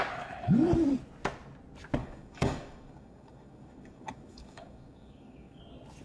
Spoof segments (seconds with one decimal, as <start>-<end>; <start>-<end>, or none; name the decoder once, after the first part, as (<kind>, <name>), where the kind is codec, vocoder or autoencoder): 2.0-5.6 (codec, DAC)